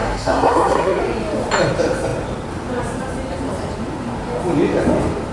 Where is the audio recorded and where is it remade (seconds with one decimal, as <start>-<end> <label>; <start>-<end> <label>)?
0.0-1.0 remade; 1.0-5.3 recorded